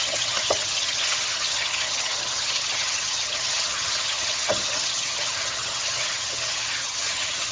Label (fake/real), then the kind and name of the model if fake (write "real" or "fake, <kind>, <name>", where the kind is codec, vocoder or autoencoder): fake, vocoder, HiFi-GAN